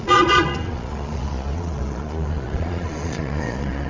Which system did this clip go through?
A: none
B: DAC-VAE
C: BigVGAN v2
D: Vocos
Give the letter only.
D